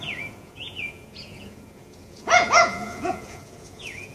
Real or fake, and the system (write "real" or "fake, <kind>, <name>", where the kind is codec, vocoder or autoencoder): fake, vocoder, Vocos